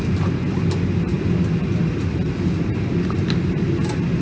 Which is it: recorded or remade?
recorded